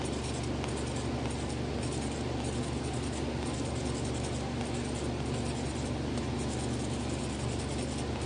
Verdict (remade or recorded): recorded